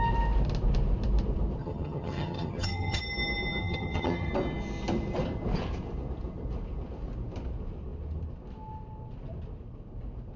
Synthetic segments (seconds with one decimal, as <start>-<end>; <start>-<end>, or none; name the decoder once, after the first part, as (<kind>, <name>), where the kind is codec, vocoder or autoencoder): 1.6-3.0 (vocoder, HiFi-GAN); 3.6-4.3